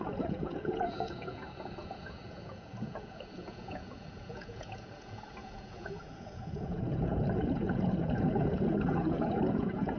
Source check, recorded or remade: remade